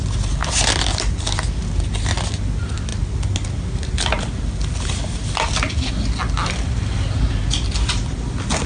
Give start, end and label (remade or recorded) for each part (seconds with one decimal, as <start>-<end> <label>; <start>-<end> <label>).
0.0-8.7 recorded